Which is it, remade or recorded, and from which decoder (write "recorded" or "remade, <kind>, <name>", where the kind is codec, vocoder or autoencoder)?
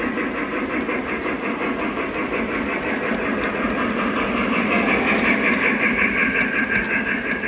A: recorded